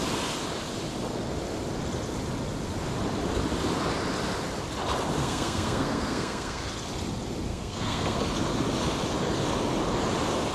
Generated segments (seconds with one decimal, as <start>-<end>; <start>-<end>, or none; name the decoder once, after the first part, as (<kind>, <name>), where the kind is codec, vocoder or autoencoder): 5.2-6.7 (codec, SNAC); 7.5-8.2